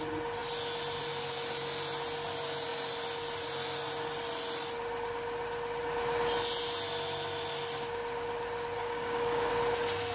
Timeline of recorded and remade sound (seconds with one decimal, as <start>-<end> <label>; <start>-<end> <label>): 0.0-8.8 recorded; 8.8-9.5 remade; 9.5-10.1 recorded